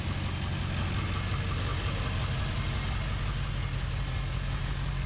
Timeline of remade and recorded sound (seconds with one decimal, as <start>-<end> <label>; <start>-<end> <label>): 0.0-5.1 recorded